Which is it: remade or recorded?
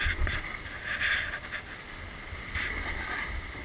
recorded